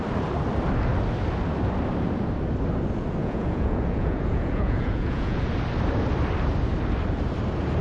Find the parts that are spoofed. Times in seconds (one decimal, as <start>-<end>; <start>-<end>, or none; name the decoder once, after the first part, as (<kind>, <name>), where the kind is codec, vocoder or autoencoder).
3.2-5.4 (vocoder, Vocos)